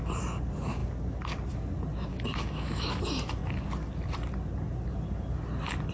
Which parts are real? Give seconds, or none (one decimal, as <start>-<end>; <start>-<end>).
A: 0.0-2.1; 3.0-5.9